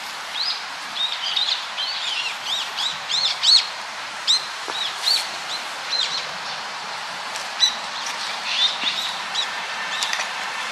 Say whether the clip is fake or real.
fake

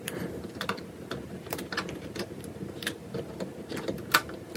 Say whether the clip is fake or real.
real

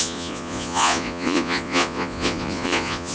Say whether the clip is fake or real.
fake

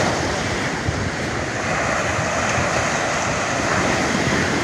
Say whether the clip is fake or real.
real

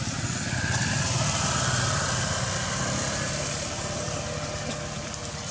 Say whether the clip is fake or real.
real